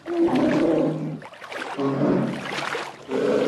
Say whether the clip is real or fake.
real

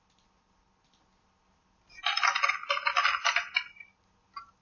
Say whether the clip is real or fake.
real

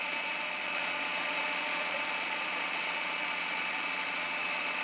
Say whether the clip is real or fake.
fake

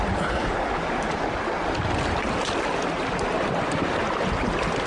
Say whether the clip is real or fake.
real